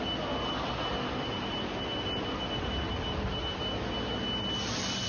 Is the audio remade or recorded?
recorded